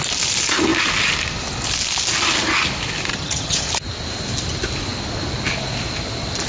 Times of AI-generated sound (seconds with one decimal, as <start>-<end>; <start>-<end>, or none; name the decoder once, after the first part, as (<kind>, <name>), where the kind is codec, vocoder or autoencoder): 3.1-3.7 (vocoder, HiFi-GAN)

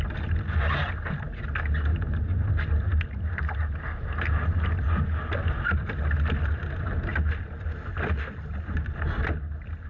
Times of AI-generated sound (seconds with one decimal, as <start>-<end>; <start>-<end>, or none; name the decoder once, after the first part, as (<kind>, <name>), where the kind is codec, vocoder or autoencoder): none

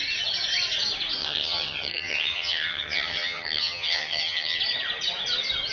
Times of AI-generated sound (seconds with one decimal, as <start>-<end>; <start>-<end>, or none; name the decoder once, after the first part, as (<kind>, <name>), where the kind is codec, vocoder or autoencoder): 1.2-4.6 (vocoder, HiFi-GAN)

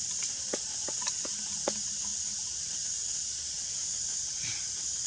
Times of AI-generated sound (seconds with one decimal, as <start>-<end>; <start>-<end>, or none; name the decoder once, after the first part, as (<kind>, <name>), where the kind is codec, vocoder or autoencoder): none

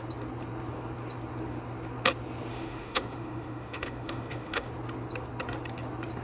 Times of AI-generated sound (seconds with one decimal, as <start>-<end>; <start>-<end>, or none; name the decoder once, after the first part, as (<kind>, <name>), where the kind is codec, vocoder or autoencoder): 2.5-4.7 (autoencoder, DAC-VAE)